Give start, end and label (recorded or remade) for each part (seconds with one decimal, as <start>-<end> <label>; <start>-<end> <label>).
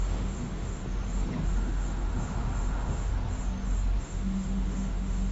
0.0-0.8 remade; 0.8-1.4 recorded; 1.4-3.1 remade; 3.1-4.0 recorded; 4.0-5.3 remade